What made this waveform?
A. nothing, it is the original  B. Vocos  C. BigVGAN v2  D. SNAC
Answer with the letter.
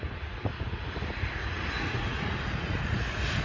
B